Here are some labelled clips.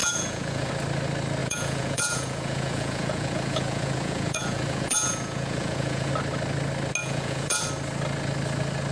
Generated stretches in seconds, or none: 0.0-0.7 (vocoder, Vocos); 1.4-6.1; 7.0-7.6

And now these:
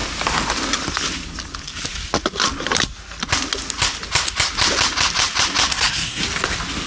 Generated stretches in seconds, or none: 5.7-6.2 (codec, SNAC)